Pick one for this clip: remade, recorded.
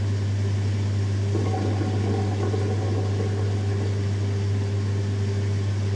recorded